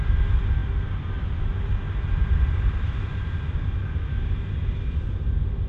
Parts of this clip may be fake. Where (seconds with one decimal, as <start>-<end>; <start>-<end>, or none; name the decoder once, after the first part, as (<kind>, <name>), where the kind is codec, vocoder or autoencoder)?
none